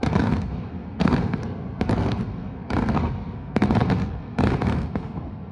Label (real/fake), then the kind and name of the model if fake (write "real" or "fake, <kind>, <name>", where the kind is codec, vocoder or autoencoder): fake, codec, SNAC